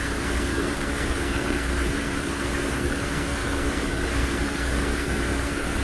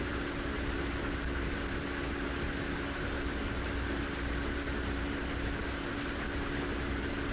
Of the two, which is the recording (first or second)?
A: second